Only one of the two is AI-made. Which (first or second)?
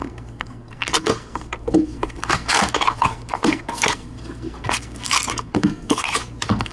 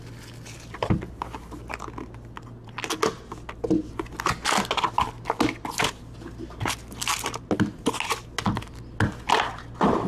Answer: first